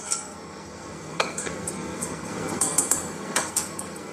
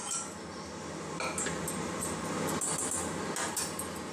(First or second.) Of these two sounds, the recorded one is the second